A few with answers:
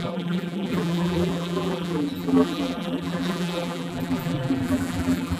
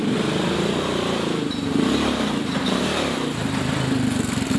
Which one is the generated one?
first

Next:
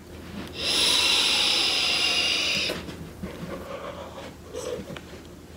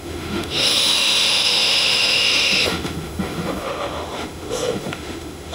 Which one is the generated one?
second